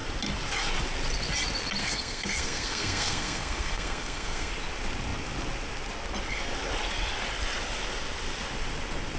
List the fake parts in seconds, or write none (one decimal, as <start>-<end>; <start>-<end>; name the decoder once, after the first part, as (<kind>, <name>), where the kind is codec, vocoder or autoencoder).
1.8-4.5 (codec, SNAC)